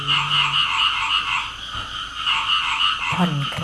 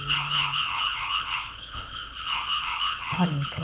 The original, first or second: first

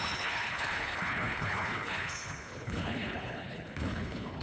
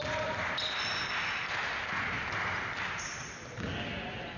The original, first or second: second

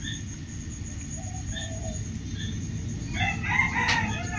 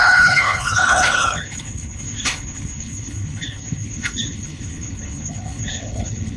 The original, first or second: first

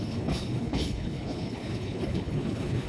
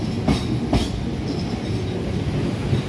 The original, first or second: second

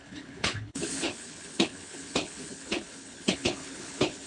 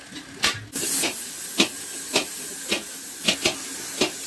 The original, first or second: second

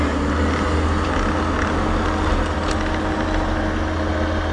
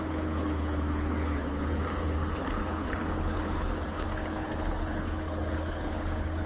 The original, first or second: first